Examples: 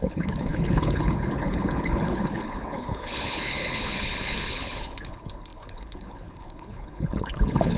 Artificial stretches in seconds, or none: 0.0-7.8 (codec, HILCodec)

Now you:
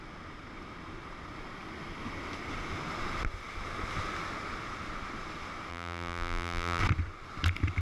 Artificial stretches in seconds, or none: 5.7-6.8 (vocoder, BigVGAN v2)

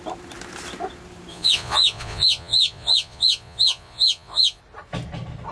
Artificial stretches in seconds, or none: 1.3-4.6 (vocoder, Vocos)

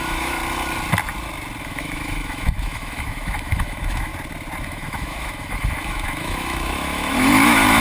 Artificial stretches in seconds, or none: 0.0-0.4 (autoencoder, DAC-VAE); 1.6-4.1; 4.6-7.8

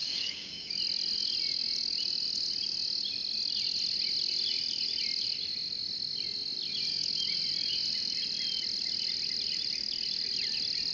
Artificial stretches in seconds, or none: 0.0-0.7 (codec, DAC)

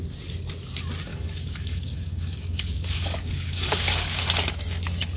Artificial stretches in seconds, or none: 1.1-4.2 (codec, DAC)

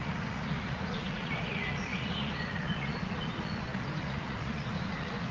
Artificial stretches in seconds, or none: 0.0-5.3 (vocoder, Vocos)

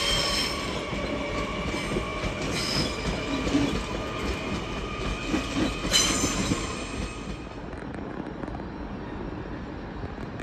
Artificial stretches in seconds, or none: none